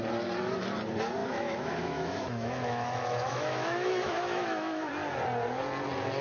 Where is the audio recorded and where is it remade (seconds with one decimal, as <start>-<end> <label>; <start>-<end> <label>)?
0.0-1.2 recorded; 1.2-4.9 remade; 4.9-6.2 recorded